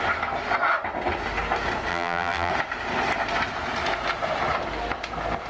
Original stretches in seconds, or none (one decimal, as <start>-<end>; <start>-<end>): 0.0-1.9; 2.5-5.5